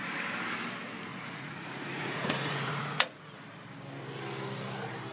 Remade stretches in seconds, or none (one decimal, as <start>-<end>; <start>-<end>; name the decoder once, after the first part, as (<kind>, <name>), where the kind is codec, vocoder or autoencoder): 1.1-3.4 (vocoder, Vocos)